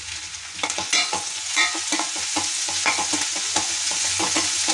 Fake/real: fake